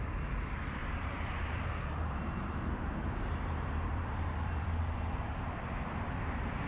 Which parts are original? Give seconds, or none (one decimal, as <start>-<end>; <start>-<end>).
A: 0.0-0.8; 4.8-6.7